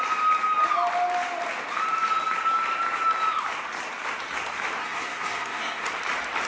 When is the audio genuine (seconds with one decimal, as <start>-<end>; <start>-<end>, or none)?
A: 0.0-4.8; 5.9-6.5